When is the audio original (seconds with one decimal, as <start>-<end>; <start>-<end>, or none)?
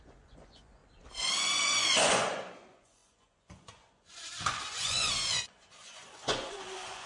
0.8-1.4